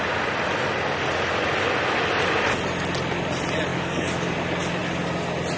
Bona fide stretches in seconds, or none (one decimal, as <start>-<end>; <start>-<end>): 0.0-3.7; 4.3-5.6